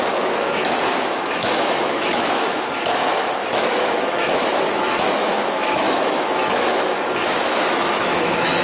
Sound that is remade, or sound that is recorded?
remade